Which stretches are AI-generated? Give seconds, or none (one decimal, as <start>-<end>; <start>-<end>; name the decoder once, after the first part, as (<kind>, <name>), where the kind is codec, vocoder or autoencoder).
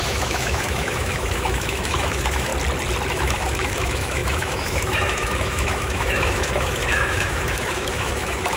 0.0-2.5 (autoencoder, DAC-VAE); 3.1-8.6